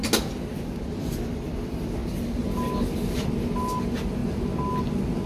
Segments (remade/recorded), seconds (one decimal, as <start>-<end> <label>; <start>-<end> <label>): 0.0-5.3 recorded

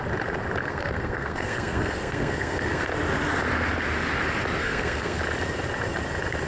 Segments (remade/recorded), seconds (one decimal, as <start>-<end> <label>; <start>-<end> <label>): 0.0-0.6 recorded; 0.6-2.9 remade; 2.9-4.6 recorded; 4.6-5.2 remade; 5.2-6.5 recorded

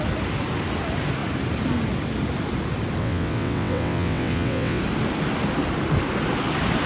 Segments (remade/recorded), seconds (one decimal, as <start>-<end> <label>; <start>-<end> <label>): 0.0-3.0 recorded; 3.0-4.8 remade; 4.8-6.9 recorded